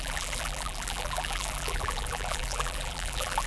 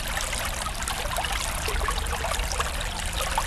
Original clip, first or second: second